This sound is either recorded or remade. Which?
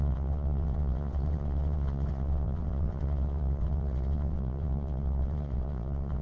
remade